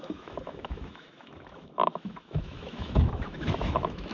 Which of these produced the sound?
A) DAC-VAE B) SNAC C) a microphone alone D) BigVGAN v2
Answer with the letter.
A